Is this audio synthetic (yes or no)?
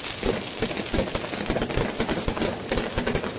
no